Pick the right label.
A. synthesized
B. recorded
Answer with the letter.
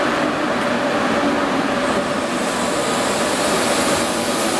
B